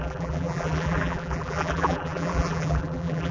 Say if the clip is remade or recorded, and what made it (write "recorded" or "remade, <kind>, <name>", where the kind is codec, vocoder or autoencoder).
remade, vocoder, BigVGAN v2